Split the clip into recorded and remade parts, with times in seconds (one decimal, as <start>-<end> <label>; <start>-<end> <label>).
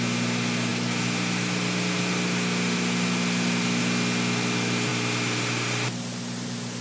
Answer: 0.0-6.8 recorded